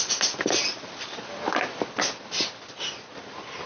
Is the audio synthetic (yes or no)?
no